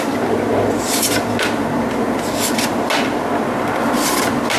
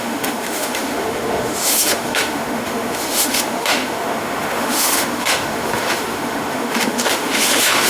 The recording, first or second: first